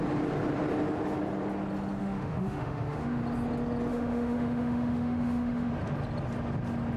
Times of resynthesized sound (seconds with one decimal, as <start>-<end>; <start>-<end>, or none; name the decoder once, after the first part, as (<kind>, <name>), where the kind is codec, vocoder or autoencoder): 2.0-3.2 (autoencoder, DAC-VAE); 3.9-5.7

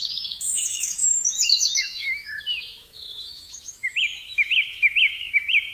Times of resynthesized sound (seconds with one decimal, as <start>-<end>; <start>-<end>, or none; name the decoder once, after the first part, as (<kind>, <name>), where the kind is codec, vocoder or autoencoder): 0.0-5.7 (autoencoder, DAC-VAE)

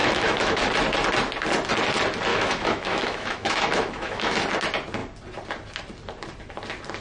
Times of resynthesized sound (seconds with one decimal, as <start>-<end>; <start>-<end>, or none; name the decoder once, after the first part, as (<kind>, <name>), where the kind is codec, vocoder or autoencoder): 0.0-0.6 (autoencoder, DAC-VAE); 2.3-4.4

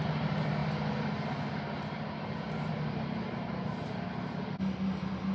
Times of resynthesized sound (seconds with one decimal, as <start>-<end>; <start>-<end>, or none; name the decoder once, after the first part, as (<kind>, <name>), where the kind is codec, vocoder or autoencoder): none

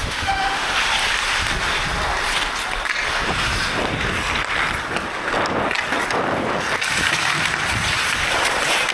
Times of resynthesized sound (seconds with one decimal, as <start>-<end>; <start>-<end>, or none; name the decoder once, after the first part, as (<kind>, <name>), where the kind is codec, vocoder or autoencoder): 0.0-0.7 (autoencoder, DAC-VAE)

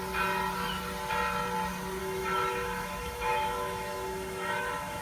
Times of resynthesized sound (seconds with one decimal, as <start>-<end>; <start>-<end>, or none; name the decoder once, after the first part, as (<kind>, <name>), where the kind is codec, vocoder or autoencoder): 2.0-5.0 (autoencoder, DAC-VAE)

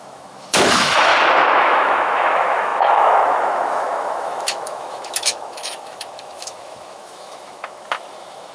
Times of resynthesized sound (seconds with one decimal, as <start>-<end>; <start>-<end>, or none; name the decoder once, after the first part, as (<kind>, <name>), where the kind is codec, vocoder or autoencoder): 0.0-1.1 (autoencoder, DAC-VAE); 1.6-8.5